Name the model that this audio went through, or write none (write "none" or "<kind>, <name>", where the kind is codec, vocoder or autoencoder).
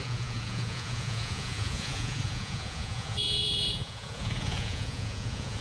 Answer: vocoder, Vocos